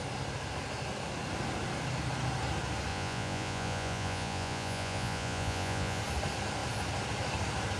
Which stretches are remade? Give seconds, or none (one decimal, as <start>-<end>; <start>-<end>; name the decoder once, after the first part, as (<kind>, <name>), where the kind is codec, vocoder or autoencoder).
2.9-6.0 (vocoder, Vocos)